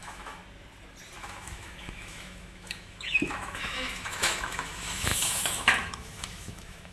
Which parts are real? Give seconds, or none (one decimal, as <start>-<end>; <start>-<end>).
0.4-1.2